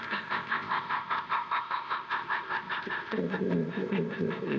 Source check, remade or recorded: remade